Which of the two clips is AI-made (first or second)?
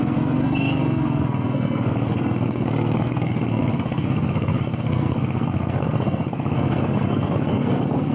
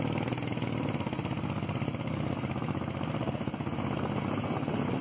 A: first